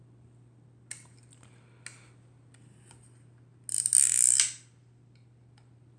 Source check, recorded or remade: recorded